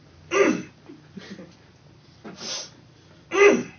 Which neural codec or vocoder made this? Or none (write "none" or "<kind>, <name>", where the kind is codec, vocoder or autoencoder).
none